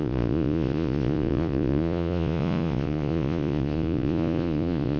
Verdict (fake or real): fake